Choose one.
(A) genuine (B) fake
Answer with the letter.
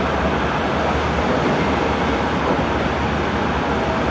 A